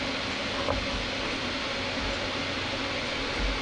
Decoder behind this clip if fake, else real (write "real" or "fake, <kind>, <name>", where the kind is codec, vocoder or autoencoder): real